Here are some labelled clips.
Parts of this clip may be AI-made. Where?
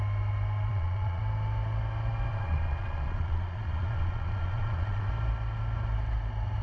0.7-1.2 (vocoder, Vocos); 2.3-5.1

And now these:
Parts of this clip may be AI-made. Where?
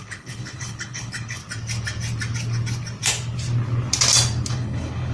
0.0-1.4 (codec, HILCodec); 4.5-5.1